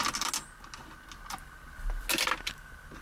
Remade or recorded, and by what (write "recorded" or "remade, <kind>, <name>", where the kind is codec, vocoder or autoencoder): recorded